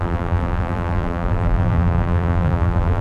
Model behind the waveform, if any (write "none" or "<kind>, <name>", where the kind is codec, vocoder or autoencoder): vocoder, BigVGAN v2